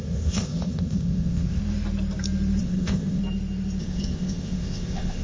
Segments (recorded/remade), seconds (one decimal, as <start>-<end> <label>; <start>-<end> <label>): 0.0-1.6 remade; 1.6-2.6 recorded; 2.6-3.2 remade; 3.2-3.8 recorded; 3.8-5.2 remade